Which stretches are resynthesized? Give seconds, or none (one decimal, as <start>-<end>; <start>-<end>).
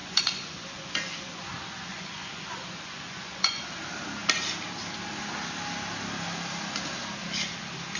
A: 0.0-1.4; 1.9-3.6